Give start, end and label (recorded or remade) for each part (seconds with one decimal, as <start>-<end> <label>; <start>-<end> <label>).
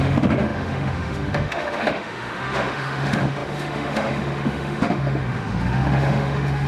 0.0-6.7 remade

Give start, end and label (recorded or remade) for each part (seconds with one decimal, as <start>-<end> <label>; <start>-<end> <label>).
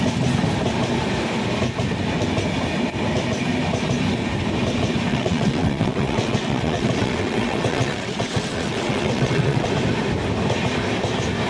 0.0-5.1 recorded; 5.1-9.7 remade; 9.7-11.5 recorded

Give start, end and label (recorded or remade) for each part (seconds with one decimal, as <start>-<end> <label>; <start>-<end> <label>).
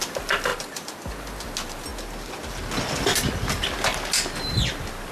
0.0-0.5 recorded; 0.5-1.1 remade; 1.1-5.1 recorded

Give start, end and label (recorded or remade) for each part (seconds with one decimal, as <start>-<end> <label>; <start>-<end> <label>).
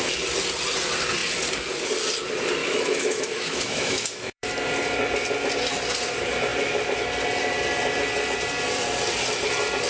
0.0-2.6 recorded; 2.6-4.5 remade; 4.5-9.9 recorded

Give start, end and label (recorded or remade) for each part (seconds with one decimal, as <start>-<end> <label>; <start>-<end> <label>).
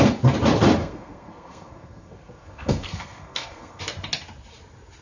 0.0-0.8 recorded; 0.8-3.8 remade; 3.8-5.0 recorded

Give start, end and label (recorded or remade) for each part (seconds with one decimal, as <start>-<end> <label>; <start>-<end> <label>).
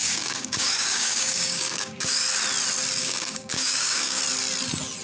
0.0-2.2 remade; 2.2-3.0 recorded; 3.0-4.2 remade; 4.2-5.0 recorded